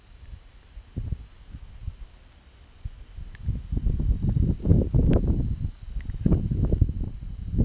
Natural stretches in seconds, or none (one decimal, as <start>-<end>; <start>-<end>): 0.0-7.6